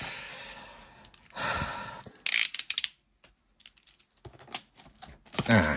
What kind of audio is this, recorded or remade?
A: recorded